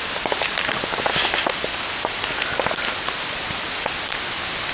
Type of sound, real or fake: real